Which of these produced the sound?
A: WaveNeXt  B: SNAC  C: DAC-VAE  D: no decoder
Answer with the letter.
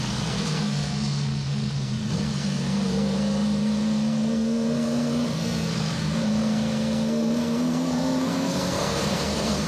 B